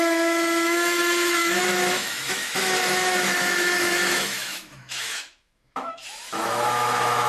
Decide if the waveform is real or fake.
fake